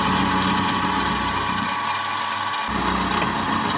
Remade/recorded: recorded